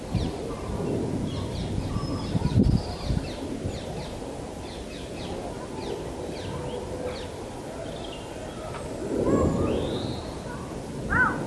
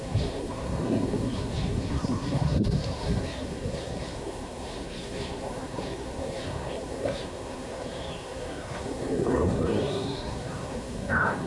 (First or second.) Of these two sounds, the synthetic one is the second